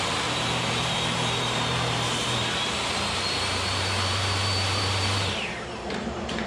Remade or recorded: remade